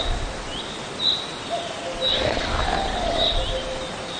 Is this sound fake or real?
real